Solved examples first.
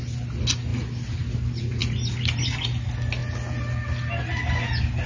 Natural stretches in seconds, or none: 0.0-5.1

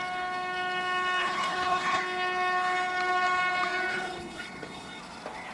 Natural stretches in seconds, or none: 0.0-1.2; 2.0-3.9; 5.0-5.5

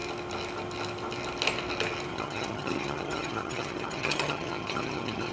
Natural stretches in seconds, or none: 0.0-2.1

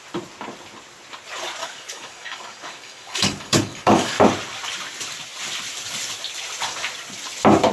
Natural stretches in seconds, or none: 0.0-1.6; 4.2-7.7

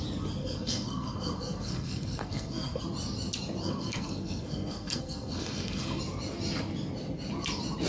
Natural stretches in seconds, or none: 0.0-0.4; 2.8-3.6; 6.0-7.9

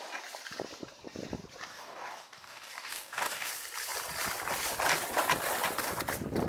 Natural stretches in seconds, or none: 0.0-1.7; 3.5-6.5

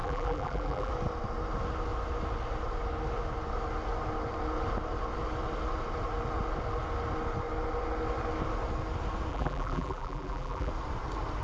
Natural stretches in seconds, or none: 0.9-9.3; 10.7-11.4

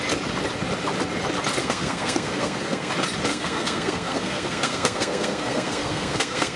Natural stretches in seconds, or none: 0.0-1.6; 2.9-3.3